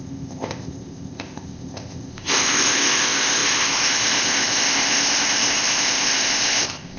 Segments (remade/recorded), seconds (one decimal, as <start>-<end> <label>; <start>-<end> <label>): 0.0-7.0 remade